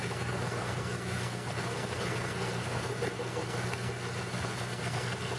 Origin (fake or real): fake